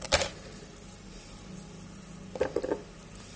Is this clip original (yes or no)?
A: yes